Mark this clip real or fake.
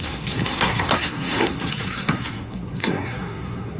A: fake